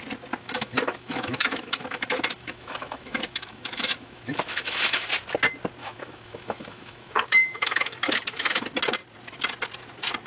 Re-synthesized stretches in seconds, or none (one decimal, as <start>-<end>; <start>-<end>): 0.4-5.1; 5.8-8.6